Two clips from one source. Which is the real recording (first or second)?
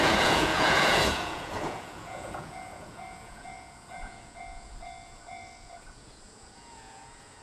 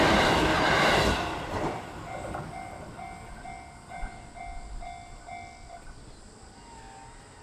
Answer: second